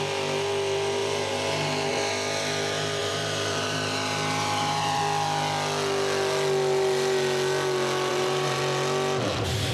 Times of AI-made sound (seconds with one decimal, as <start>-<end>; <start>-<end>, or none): 1.0-1.9; 3.0-5.0; 8.1-8.6